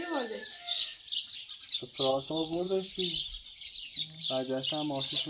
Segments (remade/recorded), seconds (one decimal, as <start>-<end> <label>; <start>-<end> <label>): 0.0-0.5 recorded; 0.5-1.0 remade; 1.0-2.1 recorded; 2.1-2.9 remade; 2.9-5.3 recorded